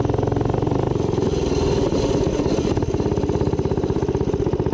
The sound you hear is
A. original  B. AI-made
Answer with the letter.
A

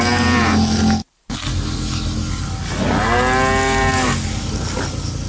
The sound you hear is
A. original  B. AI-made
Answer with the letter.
A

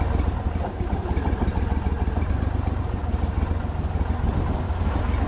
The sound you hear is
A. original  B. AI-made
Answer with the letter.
A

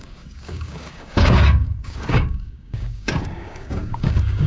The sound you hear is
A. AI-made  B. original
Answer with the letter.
A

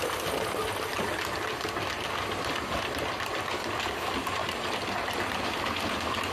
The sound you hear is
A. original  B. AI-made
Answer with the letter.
A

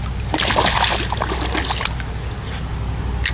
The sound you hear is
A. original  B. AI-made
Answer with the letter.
A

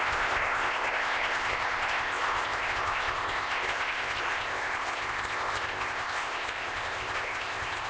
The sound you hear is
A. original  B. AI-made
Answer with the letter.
B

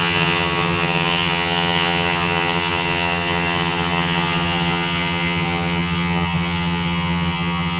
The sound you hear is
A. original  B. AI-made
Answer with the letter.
B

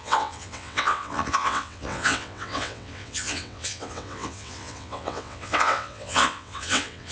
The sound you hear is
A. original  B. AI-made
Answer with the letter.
B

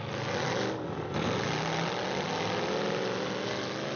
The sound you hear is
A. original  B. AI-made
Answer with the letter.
A